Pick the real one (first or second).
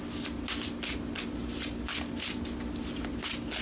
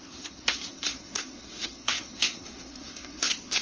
first